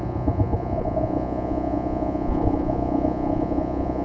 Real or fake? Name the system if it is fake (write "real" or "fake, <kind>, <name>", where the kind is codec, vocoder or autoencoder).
fake, vocoder, Vocos